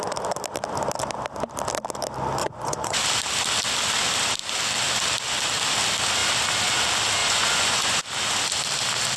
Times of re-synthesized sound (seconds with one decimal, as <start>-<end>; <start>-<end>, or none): 2.4-3.0; 7.2-8.0